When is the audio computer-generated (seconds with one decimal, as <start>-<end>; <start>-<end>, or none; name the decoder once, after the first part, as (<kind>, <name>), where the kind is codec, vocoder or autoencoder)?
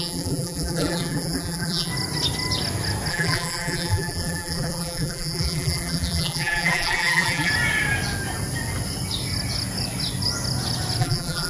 0.0-1.9 (vocoder, BigVGAN v2); 3.1-7.5; 11.0-11.5